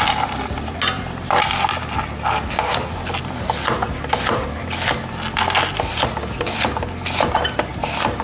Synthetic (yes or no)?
no